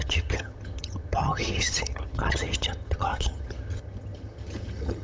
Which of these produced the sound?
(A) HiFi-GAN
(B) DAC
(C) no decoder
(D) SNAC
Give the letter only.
A